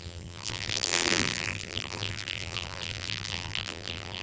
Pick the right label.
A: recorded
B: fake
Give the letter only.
B